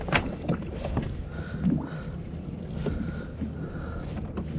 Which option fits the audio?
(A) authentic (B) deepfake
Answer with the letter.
A